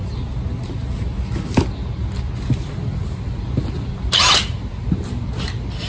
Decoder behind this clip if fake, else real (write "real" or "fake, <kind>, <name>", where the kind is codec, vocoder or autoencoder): real